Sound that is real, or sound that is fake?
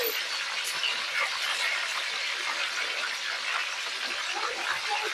real